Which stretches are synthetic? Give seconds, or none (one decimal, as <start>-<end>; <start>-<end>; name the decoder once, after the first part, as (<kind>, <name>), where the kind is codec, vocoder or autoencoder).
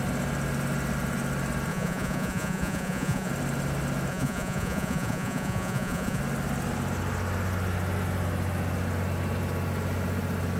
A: 1.7-3.3 (vocoder, Vocos); 4.1-6.2